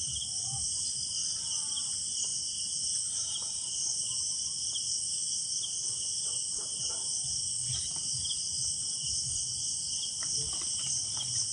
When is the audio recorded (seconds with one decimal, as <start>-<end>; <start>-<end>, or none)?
0.0-11.5